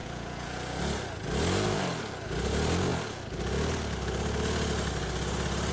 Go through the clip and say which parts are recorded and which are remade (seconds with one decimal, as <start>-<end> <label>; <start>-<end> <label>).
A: 0.0-0.8 remade; 0.8-5.7 recorded